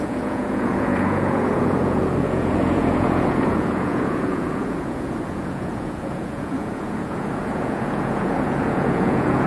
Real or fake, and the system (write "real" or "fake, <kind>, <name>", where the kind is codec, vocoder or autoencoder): fake, vocoder, Vocos